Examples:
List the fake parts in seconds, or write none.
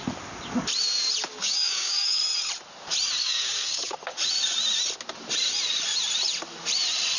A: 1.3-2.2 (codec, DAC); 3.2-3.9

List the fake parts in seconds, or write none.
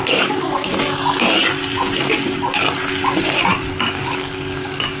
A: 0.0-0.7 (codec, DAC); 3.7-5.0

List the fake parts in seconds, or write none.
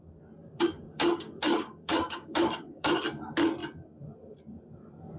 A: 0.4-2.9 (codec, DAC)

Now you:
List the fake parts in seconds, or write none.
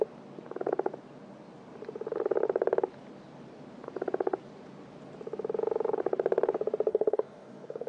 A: 6.9-7.9 (codec, DAC)